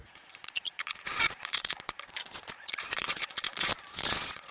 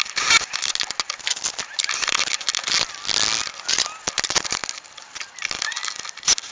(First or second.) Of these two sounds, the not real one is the first